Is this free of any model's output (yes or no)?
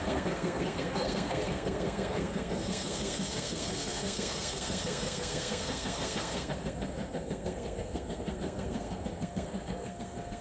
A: no